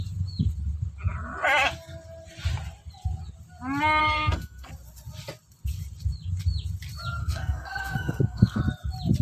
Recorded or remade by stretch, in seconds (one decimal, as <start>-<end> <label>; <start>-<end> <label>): 0.0-4.0 recorded; 4.0-4.7 remade; 4.7-7.2 recorded; 7.2-8.6 remade; 8.6-9.2 recorded

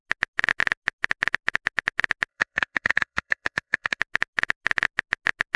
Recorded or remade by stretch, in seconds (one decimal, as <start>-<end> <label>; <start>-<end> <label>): 0.0-2.3 recorded; 2.3-4.0 remade; 4.0-5.6 recorded

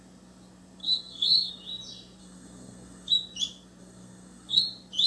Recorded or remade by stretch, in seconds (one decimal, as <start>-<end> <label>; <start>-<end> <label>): 0.0-0.8 recorded; 0.8-1.5 remade; 1.5-2.2 recorded; 2.2-3.1 remade; 3.1-3.8 recorded; 3.8-4.6 remade; 4.6-5.1 recorded

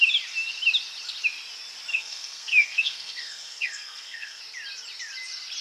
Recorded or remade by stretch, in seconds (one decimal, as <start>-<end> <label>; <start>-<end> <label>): 0.0-1.9 recorded; 1.9-4.4 remade; 4.4-5.6 recorded

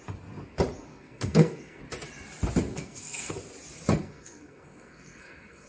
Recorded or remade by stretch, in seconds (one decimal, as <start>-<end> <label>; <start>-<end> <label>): 0.0-0.9 recorded; 0.9-1.8 remade; 1.8-2.7 recorded; 2.7-3.3 remade; 3.3-4.0 recorded; 4.0-5.7 remade